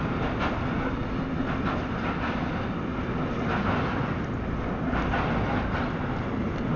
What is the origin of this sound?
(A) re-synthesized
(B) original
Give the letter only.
B